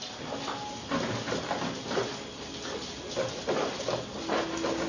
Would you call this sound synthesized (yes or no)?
no